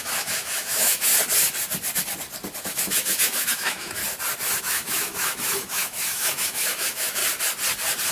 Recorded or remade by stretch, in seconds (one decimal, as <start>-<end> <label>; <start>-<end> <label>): 0.0-1.1 remade; 1.1-2.6 recorded; 2.6-4.0 remade; 4.0-4.6 recorded; 4.6-7.2 remade; 7.2-8.1 recorded